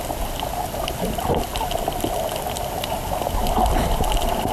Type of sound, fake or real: real